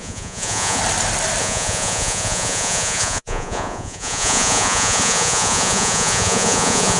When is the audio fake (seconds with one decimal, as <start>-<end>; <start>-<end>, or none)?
0.0-0.8; 1.4-7.0